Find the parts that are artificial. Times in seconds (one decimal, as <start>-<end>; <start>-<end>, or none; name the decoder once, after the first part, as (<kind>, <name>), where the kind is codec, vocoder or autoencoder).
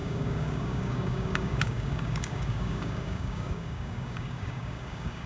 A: 0.0-5.3 (codec, DAC)